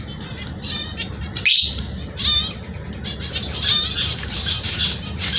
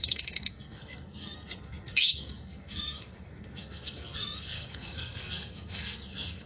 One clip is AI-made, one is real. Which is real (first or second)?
first